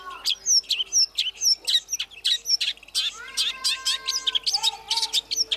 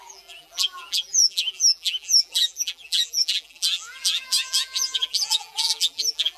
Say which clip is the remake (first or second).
second